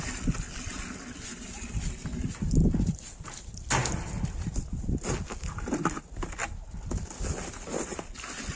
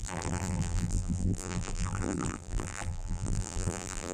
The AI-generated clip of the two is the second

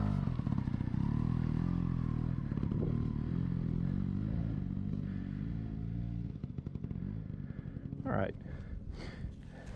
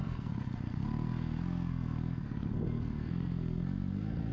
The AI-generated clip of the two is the second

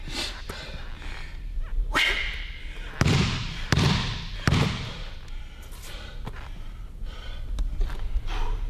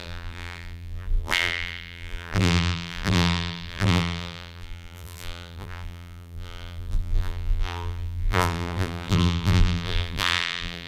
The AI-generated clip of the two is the second